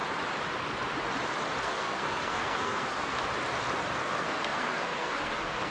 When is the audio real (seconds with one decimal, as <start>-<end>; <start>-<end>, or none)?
0.0-1.6; 3.2-3.9